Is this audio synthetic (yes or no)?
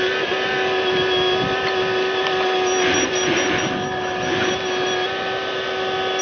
no